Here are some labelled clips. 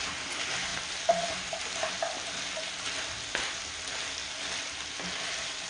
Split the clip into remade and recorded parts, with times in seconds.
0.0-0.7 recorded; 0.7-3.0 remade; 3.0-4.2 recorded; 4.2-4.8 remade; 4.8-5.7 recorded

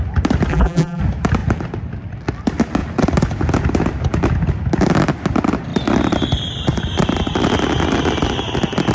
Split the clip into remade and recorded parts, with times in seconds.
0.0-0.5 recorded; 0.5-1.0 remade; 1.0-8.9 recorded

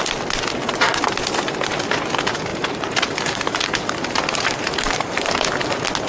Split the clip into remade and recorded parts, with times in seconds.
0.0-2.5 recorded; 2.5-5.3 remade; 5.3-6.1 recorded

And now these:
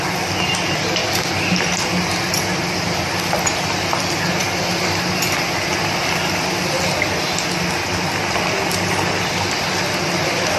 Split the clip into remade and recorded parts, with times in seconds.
0.0-1.0 remade; 1.0-2.3 recorded; 2.3-4.4 remade; 4.4-8.1 recorded; 8.1-10.6 remade